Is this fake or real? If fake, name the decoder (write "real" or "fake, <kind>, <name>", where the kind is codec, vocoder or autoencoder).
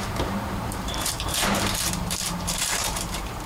fake, vocoder, BigVGAN v2